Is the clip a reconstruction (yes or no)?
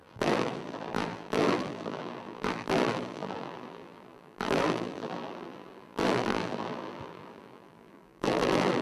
yes